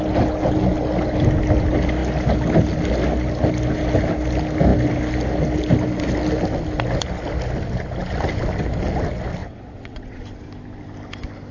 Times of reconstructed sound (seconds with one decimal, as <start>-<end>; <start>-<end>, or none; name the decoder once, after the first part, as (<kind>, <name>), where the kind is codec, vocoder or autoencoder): 9.4-10.2 (vocoder, WaveNeXt)